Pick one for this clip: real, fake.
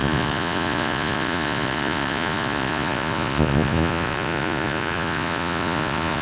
fake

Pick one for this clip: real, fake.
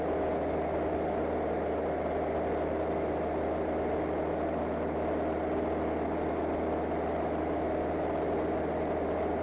real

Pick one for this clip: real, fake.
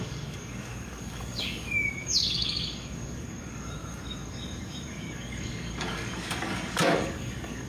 fake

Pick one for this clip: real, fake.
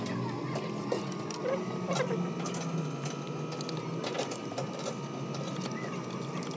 real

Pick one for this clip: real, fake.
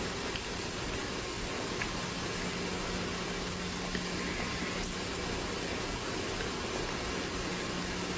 real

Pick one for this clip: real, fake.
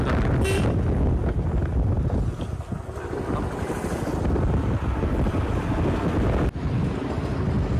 real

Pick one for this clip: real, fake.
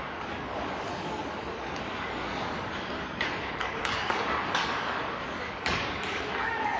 fake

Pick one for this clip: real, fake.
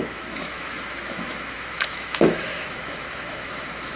fake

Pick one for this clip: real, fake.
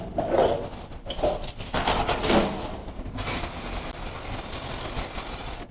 real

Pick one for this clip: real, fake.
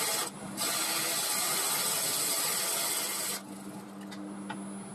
real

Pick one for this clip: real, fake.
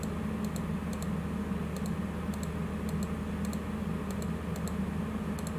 real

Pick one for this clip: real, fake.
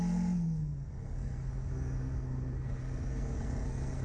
fake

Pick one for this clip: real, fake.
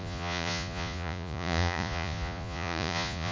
fake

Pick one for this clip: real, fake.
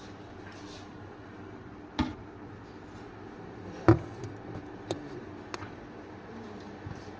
real